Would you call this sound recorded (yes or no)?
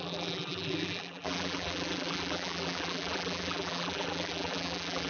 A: no